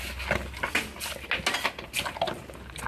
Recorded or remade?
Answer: recorded